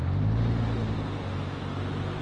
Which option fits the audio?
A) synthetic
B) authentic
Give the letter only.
B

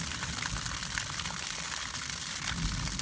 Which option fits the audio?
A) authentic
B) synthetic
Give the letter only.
A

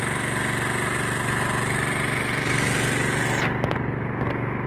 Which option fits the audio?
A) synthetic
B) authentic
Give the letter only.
B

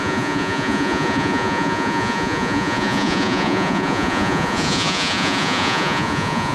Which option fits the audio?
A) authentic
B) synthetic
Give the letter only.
B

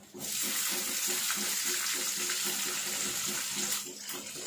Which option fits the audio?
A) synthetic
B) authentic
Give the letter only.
B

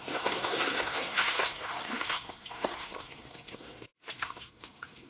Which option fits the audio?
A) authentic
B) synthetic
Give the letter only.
B